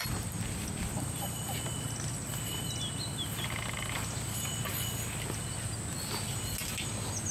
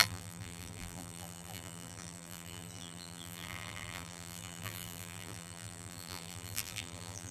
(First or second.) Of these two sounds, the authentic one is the first